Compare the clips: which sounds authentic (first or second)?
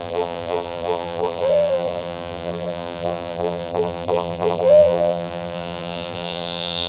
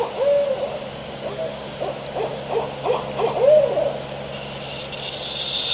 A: second